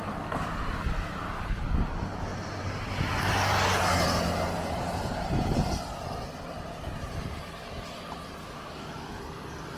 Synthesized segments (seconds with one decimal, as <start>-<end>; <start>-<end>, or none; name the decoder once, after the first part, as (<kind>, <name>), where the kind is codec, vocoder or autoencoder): 8.4-9.2 (autoencoder, DAC-VAE)